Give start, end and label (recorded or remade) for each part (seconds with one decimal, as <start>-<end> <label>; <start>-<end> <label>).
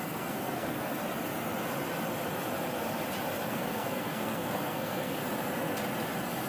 0.0-1.0 remade; 1.0-3.5 recorded; 3.5-5.2 remade; 5.2-6.5 recorded